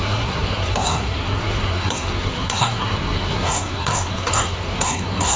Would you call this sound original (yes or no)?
no